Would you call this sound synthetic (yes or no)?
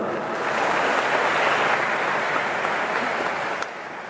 no